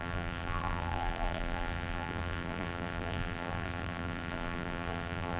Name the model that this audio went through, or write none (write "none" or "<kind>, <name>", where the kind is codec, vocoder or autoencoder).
vocoder, BigVGAN v2